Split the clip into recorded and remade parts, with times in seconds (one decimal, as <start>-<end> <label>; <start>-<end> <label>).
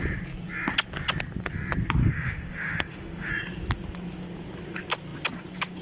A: 0.0-2.0 recorded; 2.0-3.3 remade; 3.3-5.8 recorded